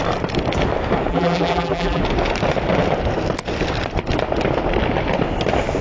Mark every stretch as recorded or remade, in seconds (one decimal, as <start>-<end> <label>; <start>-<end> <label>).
0.0-1.1 recorded; 1.1-2.0 remade; 2.0-5.8 recorded